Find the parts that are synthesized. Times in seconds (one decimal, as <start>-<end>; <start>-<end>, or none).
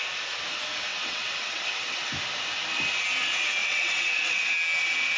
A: 0.9-2.1; 3.6-4.5